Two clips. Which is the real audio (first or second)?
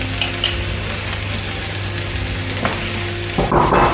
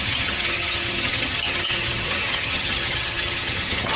first